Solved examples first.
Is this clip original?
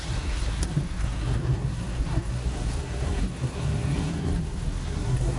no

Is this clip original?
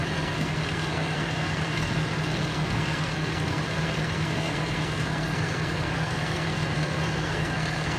no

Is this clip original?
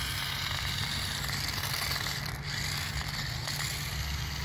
yes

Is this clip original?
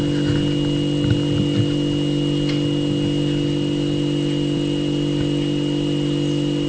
yes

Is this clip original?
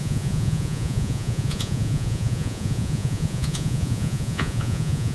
no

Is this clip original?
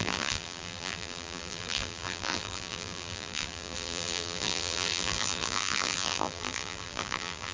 no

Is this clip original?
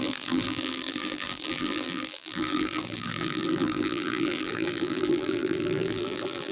no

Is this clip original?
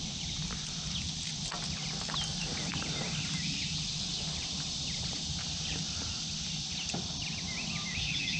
yes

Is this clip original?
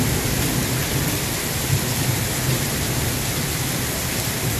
yes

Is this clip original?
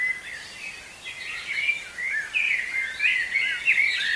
yes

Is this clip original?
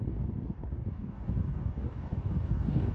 no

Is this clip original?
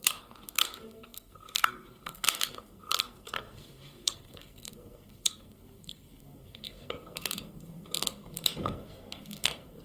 no